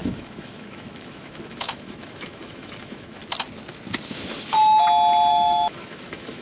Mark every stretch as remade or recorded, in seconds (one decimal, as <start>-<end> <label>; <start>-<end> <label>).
0.0-3.2 remade; 3.2-5.3 recorded; 5.3-6.4 remade